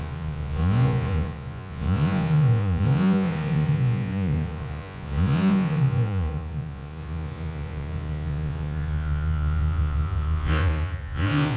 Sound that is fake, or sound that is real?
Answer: fake